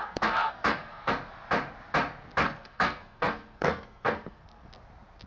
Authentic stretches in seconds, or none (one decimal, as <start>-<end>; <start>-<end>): 1.1-2.4; 4.7-5.3

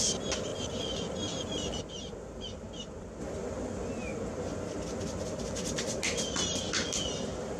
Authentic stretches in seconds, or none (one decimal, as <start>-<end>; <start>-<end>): 0.0-7.6

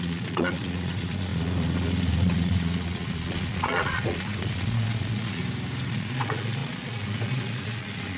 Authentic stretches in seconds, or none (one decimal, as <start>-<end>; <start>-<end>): 5.4-5.9